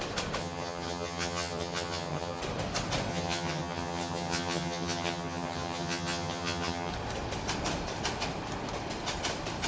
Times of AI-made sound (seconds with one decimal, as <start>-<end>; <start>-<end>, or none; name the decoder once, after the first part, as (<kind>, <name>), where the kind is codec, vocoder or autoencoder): 0.4-2.4 (vocoder, HiFi-GAN); 3.1-6.9